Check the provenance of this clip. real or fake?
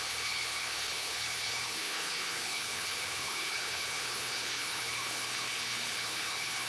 fake